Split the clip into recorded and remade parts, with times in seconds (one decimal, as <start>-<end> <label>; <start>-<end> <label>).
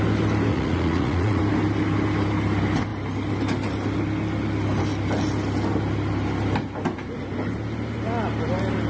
0.0-0.5 recorded; 0.5-1.4 remade; 1.4-8.9 recorded